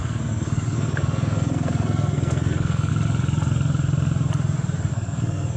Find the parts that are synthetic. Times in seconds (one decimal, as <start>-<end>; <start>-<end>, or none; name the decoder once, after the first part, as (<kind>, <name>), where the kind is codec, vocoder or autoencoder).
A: 0.0-2.9 (codec, SNAC); 4.9-5.6